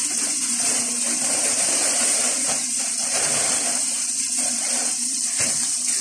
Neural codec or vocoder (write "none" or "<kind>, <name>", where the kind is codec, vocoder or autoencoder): vocoder, BigVGAN v2